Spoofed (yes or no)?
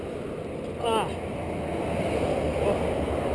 no